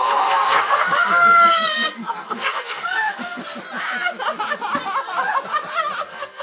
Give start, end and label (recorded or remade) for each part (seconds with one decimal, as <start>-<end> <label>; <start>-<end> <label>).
0.0-3.4 remade; 3.4-6.0 recorded; 6.0-6.4 remade